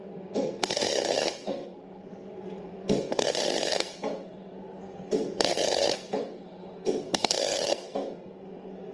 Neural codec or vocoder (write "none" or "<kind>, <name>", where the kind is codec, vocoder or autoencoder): codec, SNAC